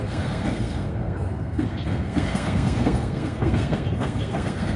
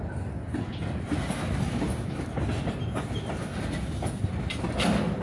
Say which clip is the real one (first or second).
second